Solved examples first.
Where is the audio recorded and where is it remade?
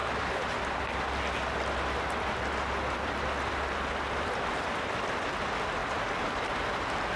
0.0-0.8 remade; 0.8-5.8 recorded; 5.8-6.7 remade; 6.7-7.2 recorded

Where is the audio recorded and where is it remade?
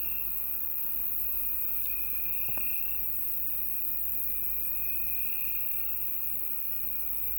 0.0-1.0 recorded; 1.0-2.8 remade; 2.8-4.8 recorded; 4.8-5.5 remade; 5.5-7.4 recorded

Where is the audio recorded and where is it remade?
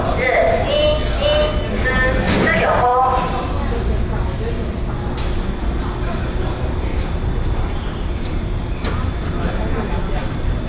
0.0-6.9 recorded; 6.9-8.9 remade; 8.9-10.7 recorded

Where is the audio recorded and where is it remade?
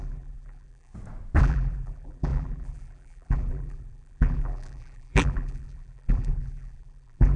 0.0-0.9 remade; 0.9-1.4 recorded; 1.4-7.4 remade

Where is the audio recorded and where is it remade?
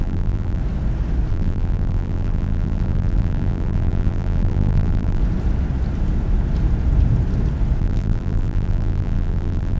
0.0-0.6 remade; 0.6-1.3 recorded; 1.3-5.2 remade; 5.2-7.8 recorded; 7.8-9.8 remade